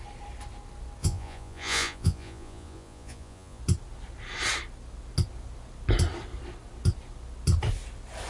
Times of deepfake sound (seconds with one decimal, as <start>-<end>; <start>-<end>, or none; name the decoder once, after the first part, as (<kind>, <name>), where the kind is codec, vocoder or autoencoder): 1.0-3.6 (vocoder, Vocos)